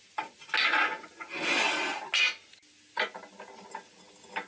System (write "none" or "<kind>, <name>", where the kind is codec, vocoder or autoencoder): none